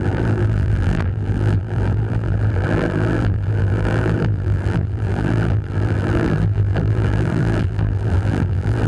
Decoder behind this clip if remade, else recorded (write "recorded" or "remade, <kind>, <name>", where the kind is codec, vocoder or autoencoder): remade, vocoder, BigVGAN v2